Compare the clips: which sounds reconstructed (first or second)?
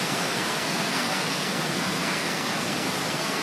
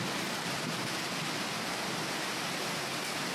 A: first